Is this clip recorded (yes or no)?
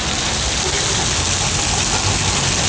yes